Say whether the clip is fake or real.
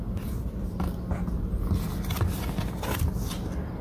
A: real